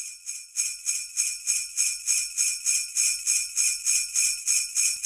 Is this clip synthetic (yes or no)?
no